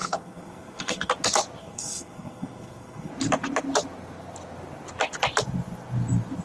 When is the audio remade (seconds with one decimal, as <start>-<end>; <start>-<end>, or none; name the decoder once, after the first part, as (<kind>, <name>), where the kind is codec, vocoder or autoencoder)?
0.0-1.1 (codec, SNAC); 1.6-3.1